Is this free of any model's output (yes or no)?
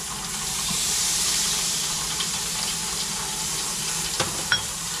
no